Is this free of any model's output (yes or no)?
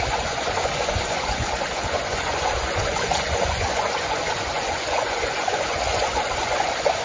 no